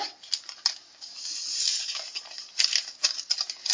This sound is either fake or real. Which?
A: fake